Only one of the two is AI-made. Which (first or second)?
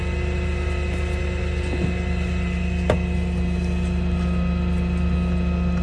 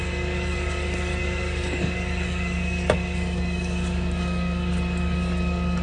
second